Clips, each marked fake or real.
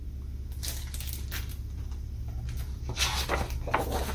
real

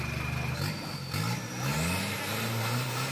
real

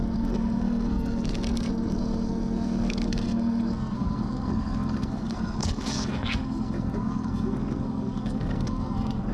fake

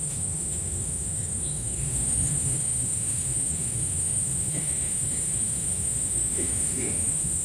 fake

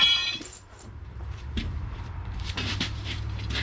fake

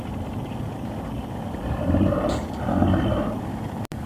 real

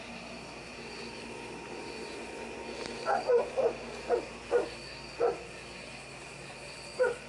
real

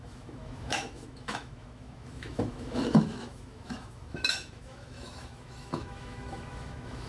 fake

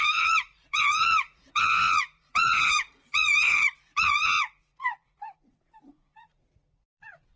fake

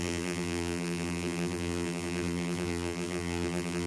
fake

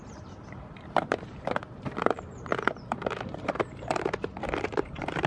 fake